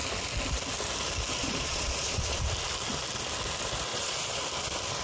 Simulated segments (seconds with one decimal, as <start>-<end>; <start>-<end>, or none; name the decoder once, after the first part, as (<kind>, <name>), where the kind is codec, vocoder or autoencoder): 1.4-2.4 (vocoder, Vocos); 3.9-4.4